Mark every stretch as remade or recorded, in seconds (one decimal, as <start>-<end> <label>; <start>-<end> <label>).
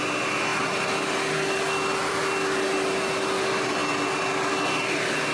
0.0-5.3 recorded